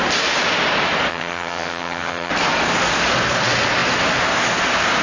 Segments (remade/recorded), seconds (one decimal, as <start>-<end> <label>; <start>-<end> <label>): 0.0-1.1 recorded; 1.1-2.3 remade; 2.3-5.0 recorded